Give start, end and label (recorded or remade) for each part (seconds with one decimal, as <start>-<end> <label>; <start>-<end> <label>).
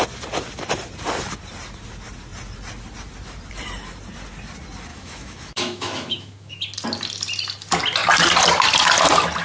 0.0-4.9 recorded; 4.9-6.6 remade; 6.6-9.4 recorded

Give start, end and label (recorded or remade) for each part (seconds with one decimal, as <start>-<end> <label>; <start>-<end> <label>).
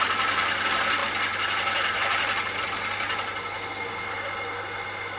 0.0-5.2 recorded